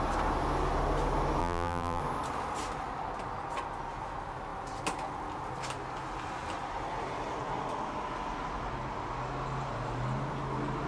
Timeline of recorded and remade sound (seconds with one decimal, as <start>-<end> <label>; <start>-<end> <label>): 0.0-1.4 recorded; 1.4-2.0 remade; 2.0-10.9 recorded